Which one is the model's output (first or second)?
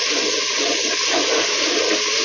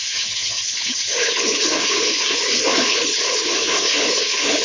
second